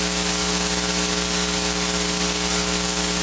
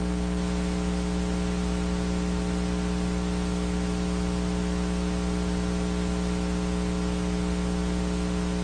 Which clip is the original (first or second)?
second